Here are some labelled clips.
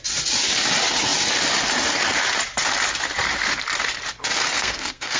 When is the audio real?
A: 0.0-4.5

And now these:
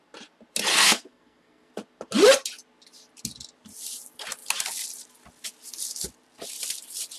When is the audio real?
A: 0.0-0.7; 1.7-7.2

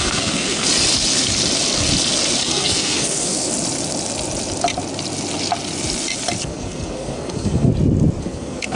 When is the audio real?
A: 0.7-2.4; 3.5-6.4; 7.7-8.2

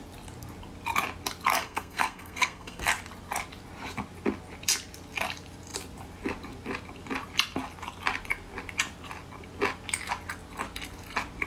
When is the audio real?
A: 0.0-1.6; 2.8-11.5

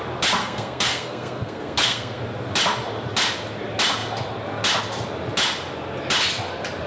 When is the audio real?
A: 0.0-0.4; 2.2-6.9

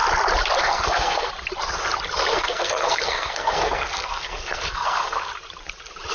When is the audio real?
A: 0.0-0.6; 1.3-2.3; 5.3-6.1

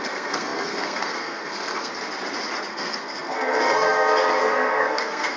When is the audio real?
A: 1.9-2.7

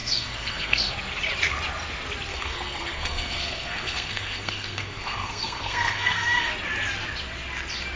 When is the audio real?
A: 0.9-2.3; 6.5-8.0